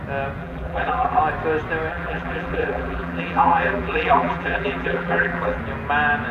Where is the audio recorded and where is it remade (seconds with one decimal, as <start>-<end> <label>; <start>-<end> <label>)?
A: 0.0-0.4 recorded; 0.4-1.2 remade; 1.2-1.9 recorded; 1.9-5.6 remade; 5.6-6.3 recorded